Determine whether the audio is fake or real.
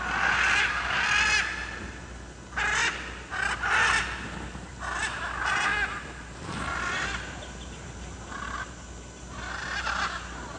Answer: real